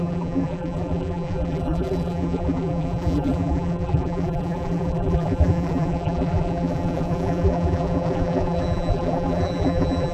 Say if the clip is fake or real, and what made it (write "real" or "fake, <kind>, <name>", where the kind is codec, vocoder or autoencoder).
fake, vocoder, BigVGAN v2